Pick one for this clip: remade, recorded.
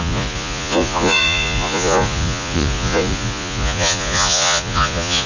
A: remade